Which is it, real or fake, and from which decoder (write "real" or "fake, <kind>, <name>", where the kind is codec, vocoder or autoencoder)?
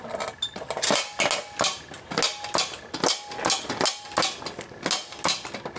real